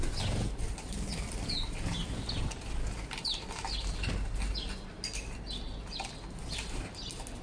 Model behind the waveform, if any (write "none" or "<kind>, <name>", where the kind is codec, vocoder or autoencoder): none